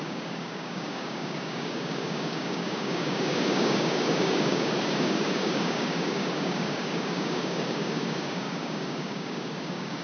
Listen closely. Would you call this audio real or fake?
fake